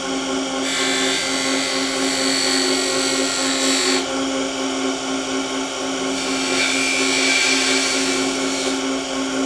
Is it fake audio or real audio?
real